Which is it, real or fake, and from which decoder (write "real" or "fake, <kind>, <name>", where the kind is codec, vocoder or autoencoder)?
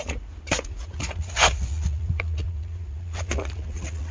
fake, vocoder, Vocos